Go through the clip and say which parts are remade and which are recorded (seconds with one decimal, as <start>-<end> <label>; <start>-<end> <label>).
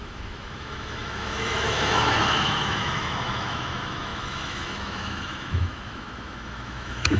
0.0-7.2 remade